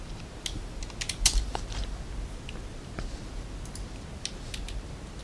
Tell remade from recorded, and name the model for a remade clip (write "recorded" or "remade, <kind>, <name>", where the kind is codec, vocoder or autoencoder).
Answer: recorded